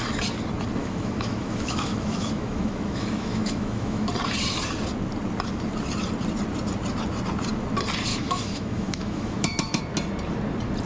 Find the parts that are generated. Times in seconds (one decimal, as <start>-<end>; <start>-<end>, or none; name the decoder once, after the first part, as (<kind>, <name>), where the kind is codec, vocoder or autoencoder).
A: 0.8-4.1 (autoencoder, DAC-VAE); 8.1-9.8